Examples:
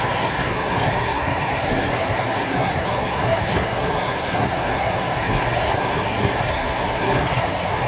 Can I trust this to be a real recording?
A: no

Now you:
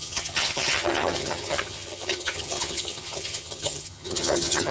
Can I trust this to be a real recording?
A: no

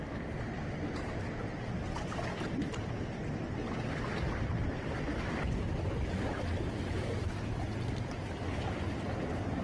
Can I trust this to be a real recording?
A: yes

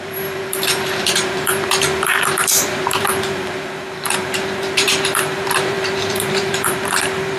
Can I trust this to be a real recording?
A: no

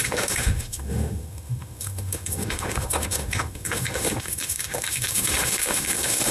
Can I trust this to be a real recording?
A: no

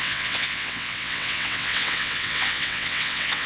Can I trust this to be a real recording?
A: no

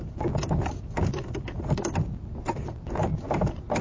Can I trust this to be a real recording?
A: yes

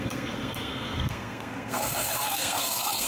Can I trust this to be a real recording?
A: no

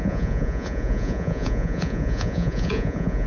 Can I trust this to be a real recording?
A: no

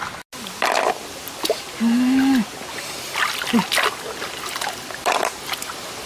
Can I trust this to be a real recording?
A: yes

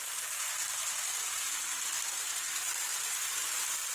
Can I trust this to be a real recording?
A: yes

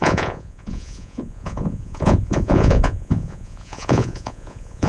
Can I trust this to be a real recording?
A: no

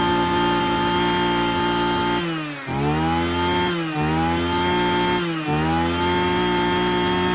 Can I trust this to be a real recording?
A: yes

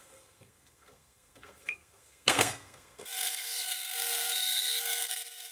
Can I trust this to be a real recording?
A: no